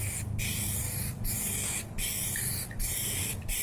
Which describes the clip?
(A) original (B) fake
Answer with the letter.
A